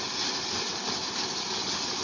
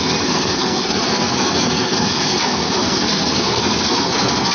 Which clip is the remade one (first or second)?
second